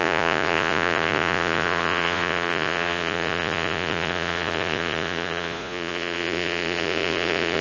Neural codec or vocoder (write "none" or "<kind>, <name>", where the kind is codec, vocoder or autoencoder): vocoder, Vocos